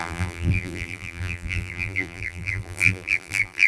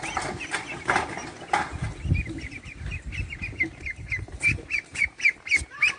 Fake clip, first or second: first